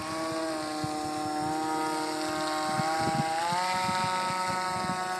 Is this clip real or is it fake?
real